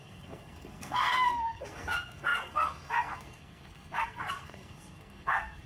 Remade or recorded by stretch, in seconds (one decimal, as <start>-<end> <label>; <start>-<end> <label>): 0.0-5.7 remade